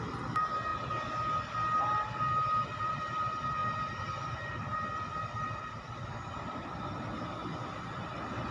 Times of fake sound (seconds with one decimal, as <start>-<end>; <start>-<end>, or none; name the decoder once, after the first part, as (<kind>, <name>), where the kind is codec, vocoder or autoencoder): 0.0-0.7 (vocoder, BigVGAN v2); 2.3-8.5